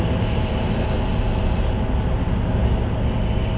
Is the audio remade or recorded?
recorded